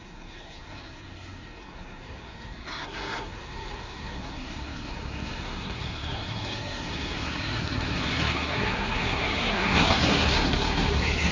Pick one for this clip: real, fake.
fake